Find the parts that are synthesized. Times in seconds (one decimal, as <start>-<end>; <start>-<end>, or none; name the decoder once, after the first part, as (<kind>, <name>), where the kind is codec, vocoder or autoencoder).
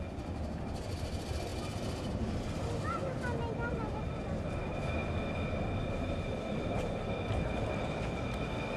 none